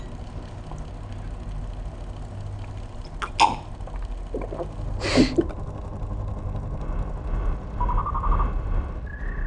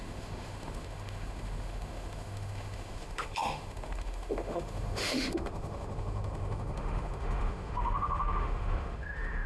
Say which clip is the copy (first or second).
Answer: second